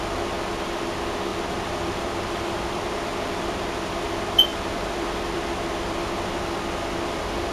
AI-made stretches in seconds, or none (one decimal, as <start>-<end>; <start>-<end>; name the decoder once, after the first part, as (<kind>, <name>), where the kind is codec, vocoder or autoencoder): 1.3-3.8 (vocoder, BigVGAN v2); 4.5-6.1